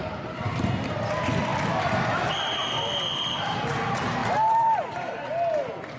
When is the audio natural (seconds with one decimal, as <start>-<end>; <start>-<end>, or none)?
0.0-1.5; 2.3-4.2; 5.3-6.0